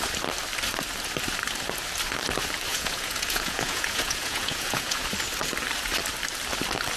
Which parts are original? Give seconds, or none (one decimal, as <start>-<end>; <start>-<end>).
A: 0.0-2.7; 5.1-7.0